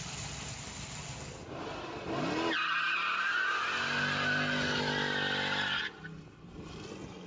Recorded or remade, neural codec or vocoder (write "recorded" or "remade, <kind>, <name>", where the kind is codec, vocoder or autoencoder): recorded